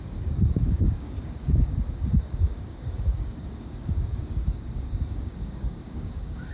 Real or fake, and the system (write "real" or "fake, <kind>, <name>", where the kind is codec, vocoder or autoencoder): fake, codec, DAC